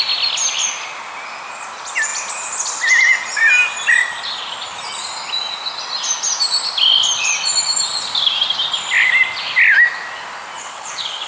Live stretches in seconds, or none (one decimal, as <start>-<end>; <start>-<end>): 0.0-10.6